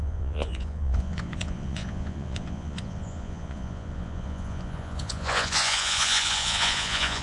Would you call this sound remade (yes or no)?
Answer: yes